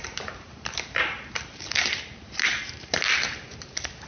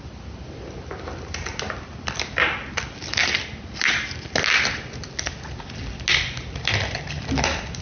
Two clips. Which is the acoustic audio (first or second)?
second